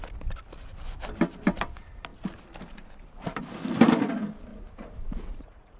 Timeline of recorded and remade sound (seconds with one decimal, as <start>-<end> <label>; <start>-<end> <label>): 0.0-4.5 recorded; 4.5-5.8 remade